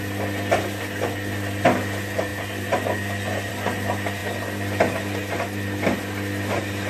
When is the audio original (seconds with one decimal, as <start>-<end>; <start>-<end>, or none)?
0.0-4.2